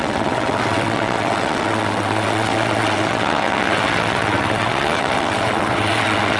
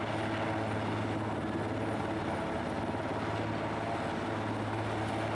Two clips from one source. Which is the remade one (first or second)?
first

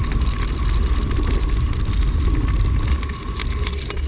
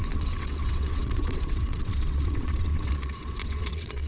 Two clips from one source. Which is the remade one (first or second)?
second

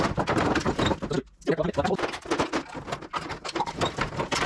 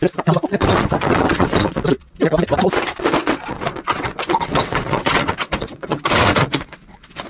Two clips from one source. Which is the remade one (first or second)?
second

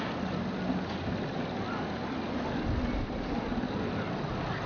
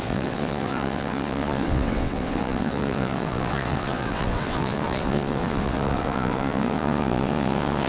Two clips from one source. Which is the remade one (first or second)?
second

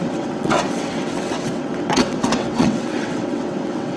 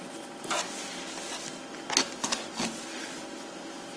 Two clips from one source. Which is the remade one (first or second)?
first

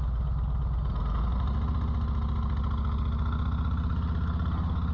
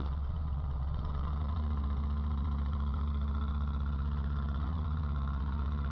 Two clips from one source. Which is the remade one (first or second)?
second